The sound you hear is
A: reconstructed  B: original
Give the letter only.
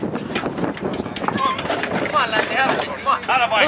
B